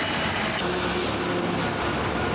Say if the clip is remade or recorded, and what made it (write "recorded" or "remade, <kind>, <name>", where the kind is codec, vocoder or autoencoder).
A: recorded